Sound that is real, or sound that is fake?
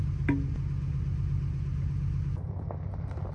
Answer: real